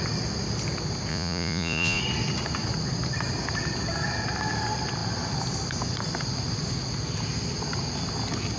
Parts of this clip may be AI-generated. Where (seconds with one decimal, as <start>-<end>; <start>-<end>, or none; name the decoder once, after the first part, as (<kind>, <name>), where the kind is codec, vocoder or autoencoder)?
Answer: 1.1-2.0 (vocoder, Vocos)